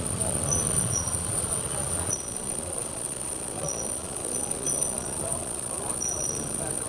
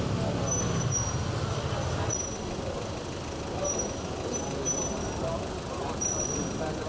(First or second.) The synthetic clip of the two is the first